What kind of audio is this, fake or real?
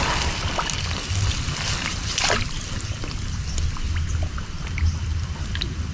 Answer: real